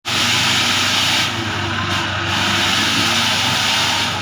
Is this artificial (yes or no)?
no